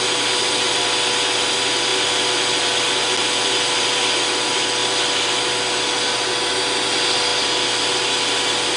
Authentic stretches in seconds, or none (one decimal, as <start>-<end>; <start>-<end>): 0.0-8.8